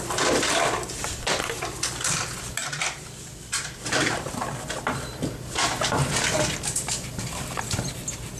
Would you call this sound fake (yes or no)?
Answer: yes